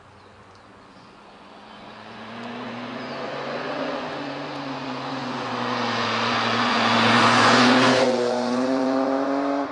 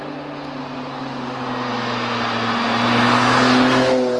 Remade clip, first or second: first